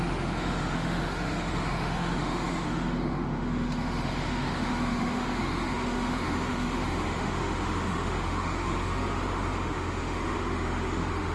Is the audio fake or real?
fake